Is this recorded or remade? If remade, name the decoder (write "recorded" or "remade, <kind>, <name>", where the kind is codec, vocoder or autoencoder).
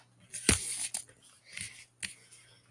recorded